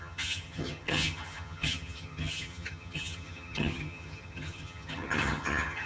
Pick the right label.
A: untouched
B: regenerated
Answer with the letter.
B